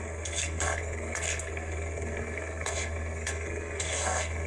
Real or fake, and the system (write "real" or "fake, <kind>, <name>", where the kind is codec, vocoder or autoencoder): fake, codec, SNAC